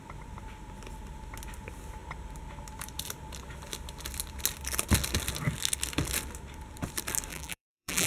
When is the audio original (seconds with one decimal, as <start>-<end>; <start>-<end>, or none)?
0.0-7.3